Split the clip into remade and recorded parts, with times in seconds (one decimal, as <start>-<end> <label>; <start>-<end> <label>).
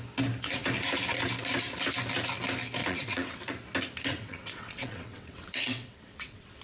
0.0-2.8 recorded; 2.8-3.5 remade; 3.5-4.1 recorded; 4.1-6.6 remade